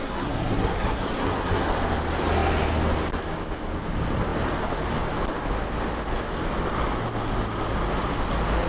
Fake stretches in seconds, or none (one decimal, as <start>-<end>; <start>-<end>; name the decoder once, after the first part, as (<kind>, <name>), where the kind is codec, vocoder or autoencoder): 0.0-1.7 (codec, SNAC)